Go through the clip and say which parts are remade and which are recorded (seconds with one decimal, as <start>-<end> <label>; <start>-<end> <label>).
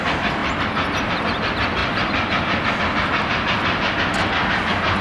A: 0.0-5.0 recorded